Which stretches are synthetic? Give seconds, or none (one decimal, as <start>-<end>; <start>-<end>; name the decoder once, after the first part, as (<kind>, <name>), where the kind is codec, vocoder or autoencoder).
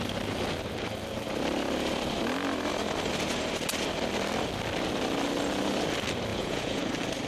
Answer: 6.3-6.8 (vocoder, Vocos)